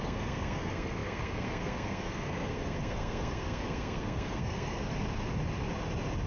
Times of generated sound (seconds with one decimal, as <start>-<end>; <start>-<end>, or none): 0.0-4.9